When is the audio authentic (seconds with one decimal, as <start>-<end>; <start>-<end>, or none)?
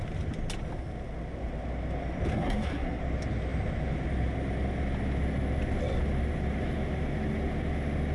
0.0-2.3; 3.0-8.1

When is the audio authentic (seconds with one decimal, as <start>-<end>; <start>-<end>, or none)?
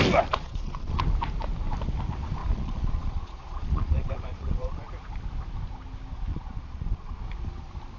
0.0-0.4; 1.0-2.4; 4.9-6.3; 7.2-8.0